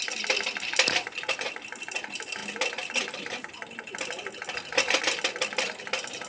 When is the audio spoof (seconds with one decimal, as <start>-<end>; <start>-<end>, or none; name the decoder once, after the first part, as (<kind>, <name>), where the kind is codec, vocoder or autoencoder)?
none